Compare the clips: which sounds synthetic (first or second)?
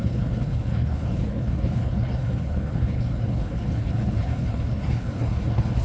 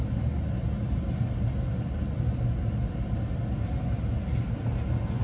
first